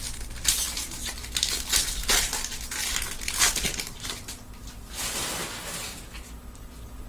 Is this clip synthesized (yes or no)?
no